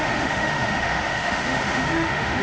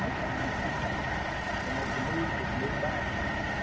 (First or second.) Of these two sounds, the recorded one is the second